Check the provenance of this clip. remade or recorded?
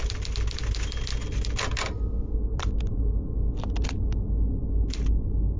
recorded